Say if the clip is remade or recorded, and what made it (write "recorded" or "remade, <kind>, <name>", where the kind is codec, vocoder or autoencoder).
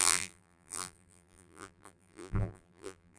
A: remade, vocoder, BigVGAN v2